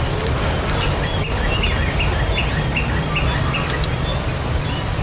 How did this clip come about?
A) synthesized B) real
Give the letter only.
B